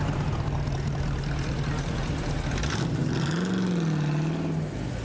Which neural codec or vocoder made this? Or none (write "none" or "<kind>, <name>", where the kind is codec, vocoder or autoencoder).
none